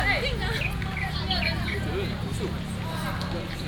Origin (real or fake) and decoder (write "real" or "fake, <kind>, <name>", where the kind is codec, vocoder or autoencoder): real